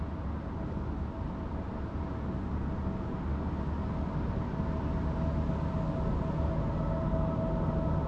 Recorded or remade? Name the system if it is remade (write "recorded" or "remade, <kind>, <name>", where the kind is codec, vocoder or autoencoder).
recorded